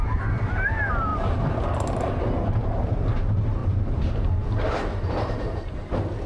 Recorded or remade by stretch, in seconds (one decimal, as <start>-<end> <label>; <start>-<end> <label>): 0.0-3.6 recorded; 3.6-4.8 remade; 4.8-6.3 recorded

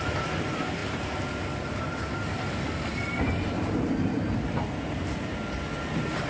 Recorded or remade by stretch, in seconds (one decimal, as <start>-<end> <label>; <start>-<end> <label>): 0.0-2.9 recorded; 2.9-4.2 remade; 4.2-6.3 recorded

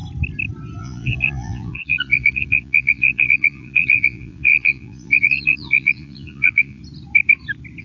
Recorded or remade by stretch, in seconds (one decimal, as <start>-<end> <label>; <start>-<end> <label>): 0.0-0.8 recorded; 0.8-6.8 remade; 6.8-7.8 recorded

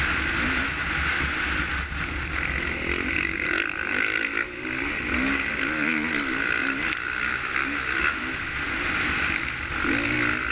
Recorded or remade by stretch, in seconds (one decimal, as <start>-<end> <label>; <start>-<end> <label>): 0.0-10.5 recorded

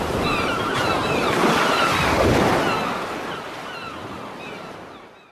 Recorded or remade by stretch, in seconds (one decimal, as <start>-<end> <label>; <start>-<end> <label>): 0.0-1.4 remade; 1.4-4.4 recorded; 4.4-5.3 remade

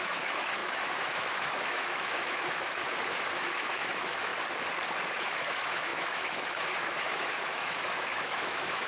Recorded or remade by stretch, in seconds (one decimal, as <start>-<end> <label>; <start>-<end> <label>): 0.0-4.3 remade; 4.3-5.1 recorded; 5.1-8.9 remade

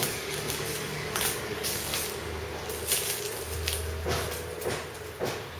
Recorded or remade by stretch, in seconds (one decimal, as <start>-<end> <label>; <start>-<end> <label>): 0.0-1.9 remade; 1.9-5.6 recorded

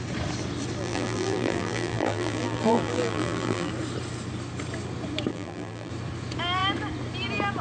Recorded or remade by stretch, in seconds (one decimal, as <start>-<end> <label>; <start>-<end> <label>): 0.0-0.8 recorded; 0.8-3.7 remade; 3.7-5.3 recorded; 5.3-5.9 remade; 5.9-7.6 recorded